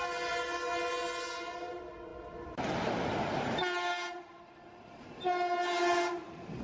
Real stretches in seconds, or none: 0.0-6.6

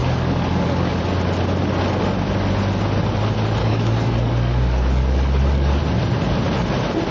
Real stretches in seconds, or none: 1.0-3.6; 5.8-7.1

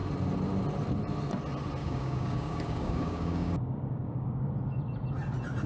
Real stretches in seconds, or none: 0.0-1.8; 4.5-5.7

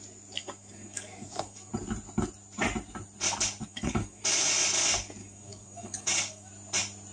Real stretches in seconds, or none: 0.0-0.4; 1.7-3.7; 4.2-5.2; 6.5-7.1

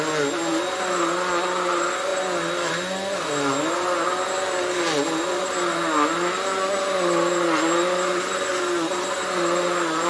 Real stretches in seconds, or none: 0.0-10.1

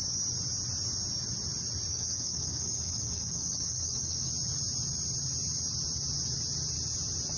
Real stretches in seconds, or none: 0.0-1.9; 4.3-7.4